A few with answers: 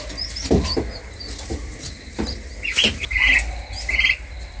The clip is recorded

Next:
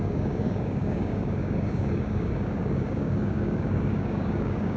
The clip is remade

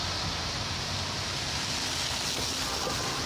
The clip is recorded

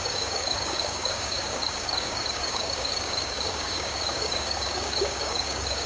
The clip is remade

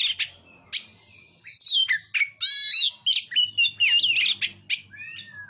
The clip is recorded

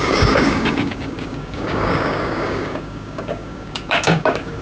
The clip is remade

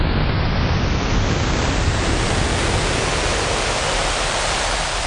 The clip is recorded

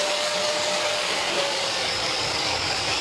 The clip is remade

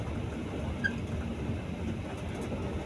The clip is recorded